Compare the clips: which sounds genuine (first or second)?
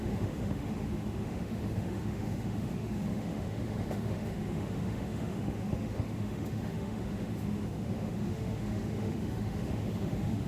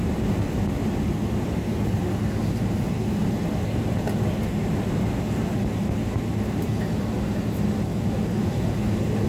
second